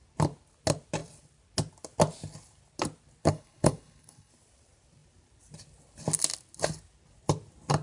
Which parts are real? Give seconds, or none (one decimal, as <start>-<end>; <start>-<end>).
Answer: 0.0-3.2; 4.3-7.8